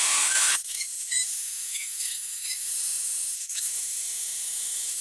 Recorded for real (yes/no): no